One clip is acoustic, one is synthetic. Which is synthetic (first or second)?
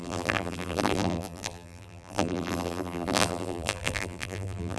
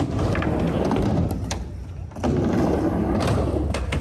first